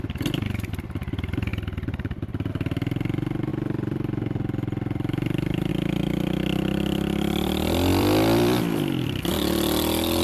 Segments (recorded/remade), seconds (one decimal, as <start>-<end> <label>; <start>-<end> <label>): 0.0-1.5 recorded; 1.5-2.5 remade; 2.5-3.5 recorded; 3.5-5.7 remade; 5.7-7.9 recorded; 7.9-9.3 remade; 9.3-10.2 recorded